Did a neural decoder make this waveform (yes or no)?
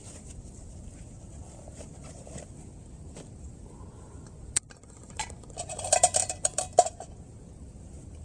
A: yes